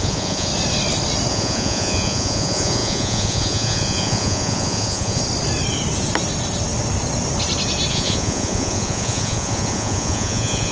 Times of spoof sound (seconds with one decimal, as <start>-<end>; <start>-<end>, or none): 0.0-0.5; 1.3-5.2; 7.9-10.7